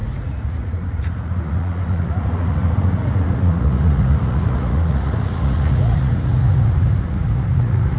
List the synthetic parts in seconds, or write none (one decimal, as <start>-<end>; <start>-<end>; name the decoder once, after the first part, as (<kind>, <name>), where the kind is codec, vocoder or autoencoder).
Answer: 0.0-8.0 (vocoder, Vocos)